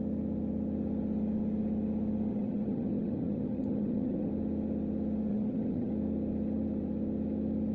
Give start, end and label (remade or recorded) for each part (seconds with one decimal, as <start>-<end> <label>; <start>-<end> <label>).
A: 0.0-2.3 recorded; 2.3-4.3 remade; 4.3-5.3 recorded; 5.3-5.9 remade; 5.9-7.7 recorded